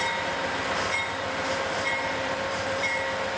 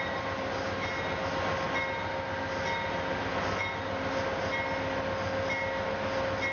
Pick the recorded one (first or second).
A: second